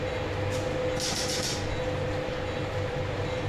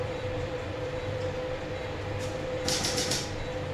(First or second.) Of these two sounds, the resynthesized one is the second